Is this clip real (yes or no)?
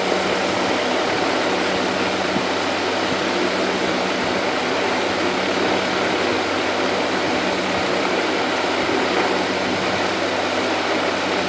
yes